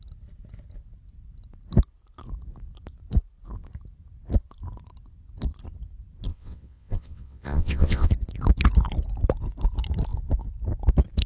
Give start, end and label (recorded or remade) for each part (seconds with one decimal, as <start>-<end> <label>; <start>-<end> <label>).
0.0-6.3 recorded; 6.3-8.1 remade; 8.1-11.3 recorded